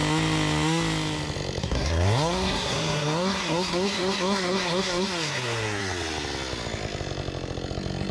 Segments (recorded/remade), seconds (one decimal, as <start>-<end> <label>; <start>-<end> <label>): 0.0-1.6 recorded; 1.6-5.8 remade; 5.8-8.1 recorded

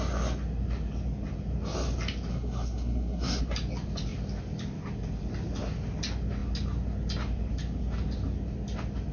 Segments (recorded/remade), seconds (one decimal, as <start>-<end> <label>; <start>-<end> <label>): 0.0-2.3 recorded; 2.3-3.4 remade; 3.4-9.1 recorded

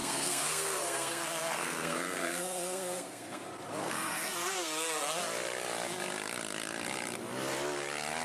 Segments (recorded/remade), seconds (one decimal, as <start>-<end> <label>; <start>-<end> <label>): 0.0-3.4 remade; 3.4-3.8 recorded; 3.8-5.2 remade; 5.2-8.2 recorded

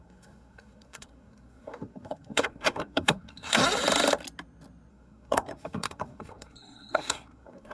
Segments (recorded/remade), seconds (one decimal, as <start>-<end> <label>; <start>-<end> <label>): 0.0-3.6 remade; 3.6-4.9 recorded; 4.9-7.7 remade

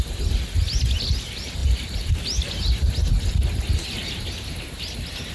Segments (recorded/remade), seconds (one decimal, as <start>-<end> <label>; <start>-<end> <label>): 0.0-5.3 recorded

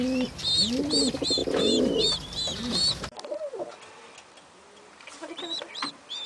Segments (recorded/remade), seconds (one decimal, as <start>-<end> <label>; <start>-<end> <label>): 0.0-6.3 recorded